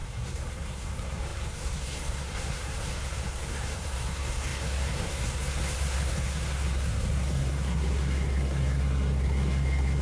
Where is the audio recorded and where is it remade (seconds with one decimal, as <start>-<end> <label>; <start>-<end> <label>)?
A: 0.0-10.0 remade